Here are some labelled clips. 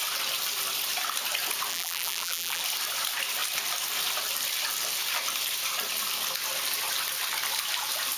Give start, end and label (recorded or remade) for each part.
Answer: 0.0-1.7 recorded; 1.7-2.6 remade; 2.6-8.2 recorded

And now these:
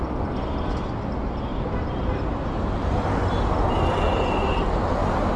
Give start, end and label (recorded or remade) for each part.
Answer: 0.0-1.5 recorded; 1.5-3.3 remade; 3.3-5.4 recorded

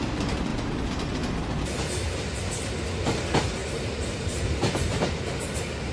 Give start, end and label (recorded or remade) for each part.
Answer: 0.0-3.6 recorded; 3.6-5.1 remade; 5.1-5.9 recorded